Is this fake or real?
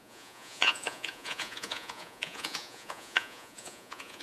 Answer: fake